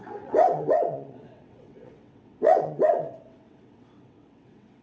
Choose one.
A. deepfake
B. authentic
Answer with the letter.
A